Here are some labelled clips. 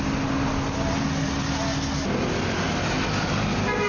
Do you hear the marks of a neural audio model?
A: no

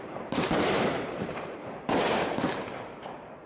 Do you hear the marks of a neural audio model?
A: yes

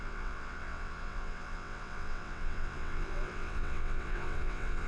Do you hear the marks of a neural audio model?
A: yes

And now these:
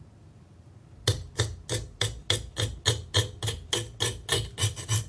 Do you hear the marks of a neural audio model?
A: no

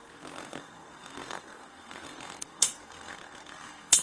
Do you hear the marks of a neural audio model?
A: yes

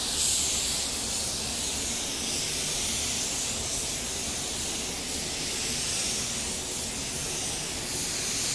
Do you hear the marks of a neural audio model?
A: no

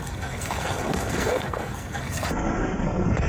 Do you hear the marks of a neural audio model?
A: yes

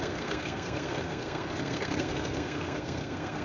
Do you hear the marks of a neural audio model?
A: yes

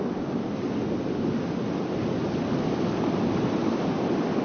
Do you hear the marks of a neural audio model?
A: no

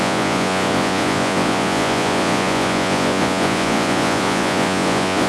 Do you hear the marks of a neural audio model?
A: yes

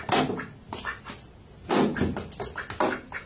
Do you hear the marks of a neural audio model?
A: no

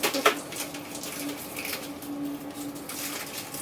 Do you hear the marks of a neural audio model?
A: no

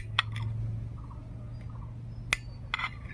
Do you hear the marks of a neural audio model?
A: no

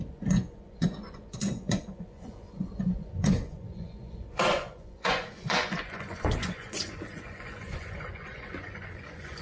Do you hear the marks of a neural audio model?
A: yes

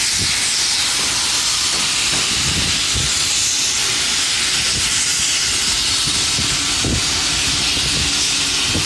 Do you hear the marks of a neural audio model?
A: no